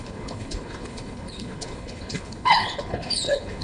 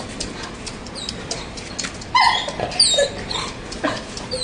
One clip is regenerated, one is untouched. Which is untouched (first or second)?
second